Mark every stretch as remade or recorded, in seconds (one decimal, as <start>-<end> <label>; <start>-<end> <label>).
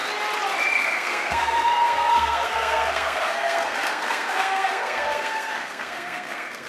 0.0-0.7 recorded; 0.7-6.7 remade